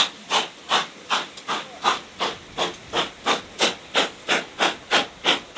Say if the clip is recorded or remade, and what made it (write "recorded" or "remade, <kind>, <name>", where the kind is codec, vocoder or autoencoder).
recorded